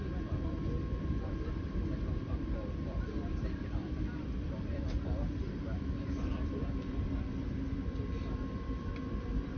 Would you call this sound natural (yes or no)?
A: no